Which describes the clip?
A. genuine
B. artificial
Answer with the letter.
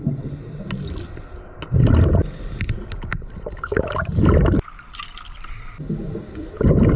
A